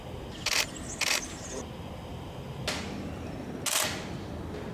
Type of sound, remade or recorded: recorded